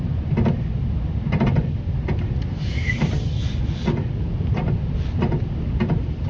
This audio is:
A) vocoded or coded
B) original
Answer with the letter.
B